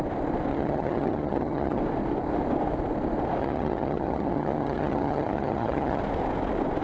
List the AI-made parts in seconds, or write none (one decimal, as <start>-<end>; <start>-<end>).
0.5-1.8; 3.4-6.0

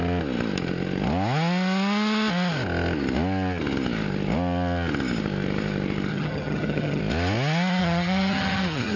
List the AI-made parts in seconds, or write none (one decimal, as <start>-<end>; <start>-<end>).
6.1-7.0; 7.8-9.0

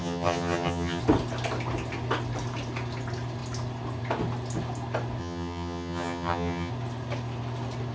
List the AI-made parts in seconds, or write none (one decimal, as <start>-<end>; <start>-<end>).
0.0-1.0; 5.2-6.7